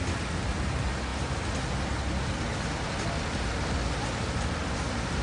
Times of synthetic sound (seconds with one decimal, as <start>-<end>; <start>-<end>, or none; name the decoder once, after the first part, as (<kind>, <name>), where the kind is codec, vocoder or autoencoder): none